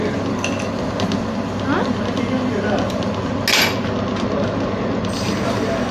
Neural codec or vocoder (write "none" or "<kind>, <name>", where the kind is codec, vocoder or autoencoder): none